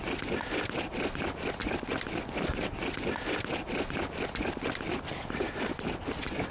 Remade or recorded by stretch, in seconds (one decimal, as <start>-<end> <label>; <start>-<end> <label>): 0.0-6.5 recorded